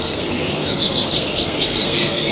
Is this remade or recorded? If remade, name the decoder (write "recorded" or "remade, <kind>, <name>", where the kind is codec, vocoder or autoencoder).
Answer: remade, codec, SNAC